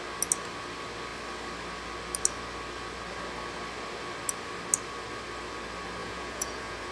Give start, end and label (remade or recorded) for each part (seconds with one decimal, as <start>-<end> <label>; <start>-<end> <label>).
0.0-6.0 recorded; 6.0-6.9 remade

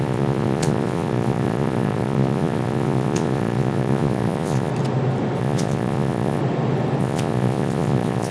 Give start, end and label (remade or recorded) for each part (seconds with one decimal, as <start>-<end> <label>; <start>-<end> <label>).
0.0-4.7 remade; 4.7-5.4 recorded; 5.4-6.4 remade; 6.4-7.0 recorded; 7.0-8.3 remade

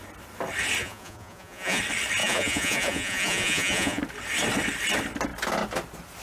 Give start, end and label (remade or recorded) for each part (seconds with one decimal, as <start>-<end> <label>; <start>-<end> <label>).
0.0-0.8 recorded; 0.8-1.8 remade; 1.8-2.2 recorded; 2.2-4.0 remade; 4.0-6.2 recorded